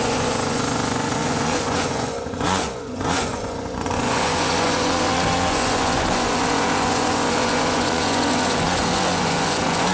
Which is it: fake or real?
fake